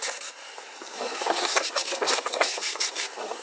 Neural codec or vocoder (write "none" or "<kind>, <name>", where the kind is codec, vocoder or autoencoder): codec, SNAC